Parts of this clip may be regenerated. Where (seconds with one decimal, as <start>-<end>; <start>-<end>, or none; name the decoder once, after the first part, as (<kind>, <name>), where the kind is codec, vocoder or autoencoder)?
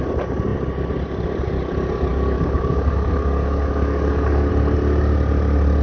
2.1-4.5 (codec, DAC)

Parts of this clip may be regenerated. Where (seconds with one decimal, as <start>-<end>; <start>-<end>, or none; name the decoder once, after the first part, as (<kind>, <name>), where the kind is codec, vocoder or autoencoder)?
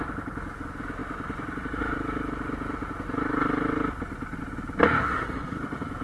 5.0-5.6 (codec, SNAC)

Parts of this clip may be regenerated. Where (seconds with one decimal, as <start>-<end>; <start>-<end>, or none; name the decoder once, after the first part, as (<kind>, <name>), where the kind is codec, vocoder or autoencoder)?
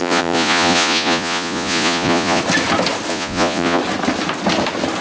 0.0-2.4 (vocoder, Vocos); 3.1-3.8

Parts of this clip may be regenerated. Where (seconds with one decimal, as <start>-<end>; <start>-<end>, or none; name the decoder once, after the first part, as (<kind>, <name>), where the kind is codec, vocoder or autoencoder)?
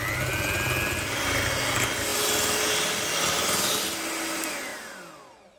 none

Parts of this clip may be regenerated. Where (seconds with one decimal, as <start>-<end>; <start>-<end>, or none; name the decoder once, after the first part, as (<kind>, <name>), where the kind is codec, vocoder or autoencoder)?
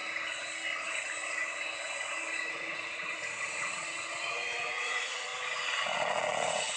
2.5-5.3 (vocoder, Vocos); 5.8-6.8